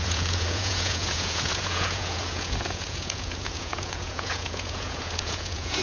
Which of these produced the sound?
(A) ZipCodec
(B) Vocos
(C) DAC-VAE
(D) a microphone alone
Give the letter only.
B